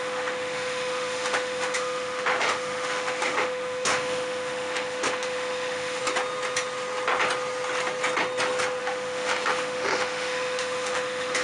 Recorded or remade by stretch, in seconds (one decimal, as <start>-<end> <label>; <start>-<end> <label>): 0.0-6.0 remade; 6.0-8.8 recorded; 8.8-11.4 remade